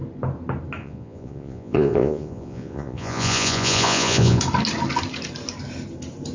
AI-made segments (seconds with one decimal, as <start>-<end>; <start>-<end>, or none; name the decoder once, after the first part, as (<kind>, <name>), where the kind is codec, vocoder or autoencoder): 0.8-4.4 (vocoder, Vocos)